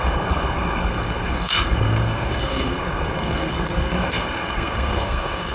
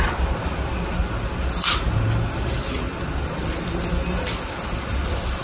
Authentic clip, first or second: second